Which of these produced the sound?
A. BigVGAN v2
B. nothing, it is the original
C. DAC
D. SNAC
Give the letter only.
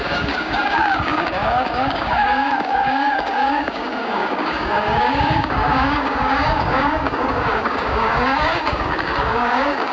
C